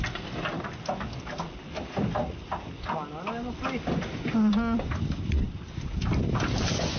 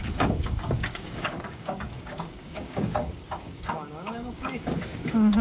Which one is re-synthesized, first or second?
second